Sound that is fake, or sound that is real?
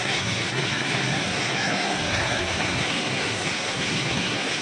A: fake